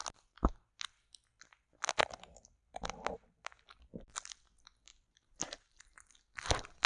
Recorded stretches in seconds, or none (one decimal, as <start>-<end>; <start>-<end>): 0.0-4.9; 6.2-6.9